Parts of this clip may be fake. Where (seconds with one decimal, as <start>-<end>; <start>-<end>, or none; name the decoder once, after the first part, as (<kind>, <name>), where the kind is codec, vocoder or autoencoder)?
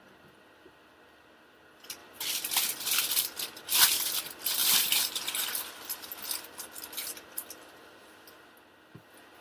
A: 2.0-3.6 (vocoder, BigVGAN v2); 4.6-7.9